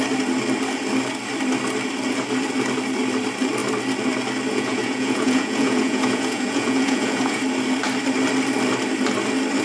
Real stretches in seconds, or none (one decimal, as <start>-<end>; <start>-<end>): 0.0-4.5; 7.4-9.6

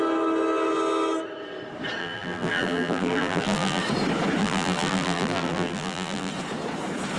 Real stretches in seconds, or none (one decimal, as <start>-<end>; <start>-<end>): 0.0-2.0; 3.8-4.4; 6.3-7.2

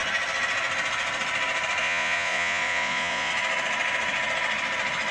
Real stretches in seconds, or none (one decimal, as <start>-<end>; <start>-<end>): 0.0-1.8; 3.3-5.1

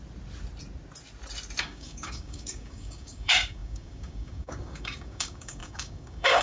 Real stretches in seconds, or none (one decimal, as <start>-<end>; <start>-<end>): 0.0-1.6

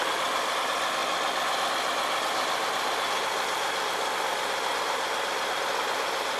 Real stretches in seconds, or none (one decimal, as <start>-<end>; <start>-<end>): 0.0-6.4